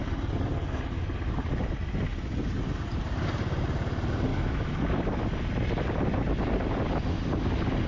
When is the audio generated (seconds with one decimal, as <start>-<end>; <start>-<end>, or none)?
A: 4.3-4.8